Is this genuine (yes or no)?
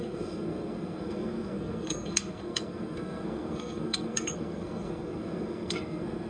no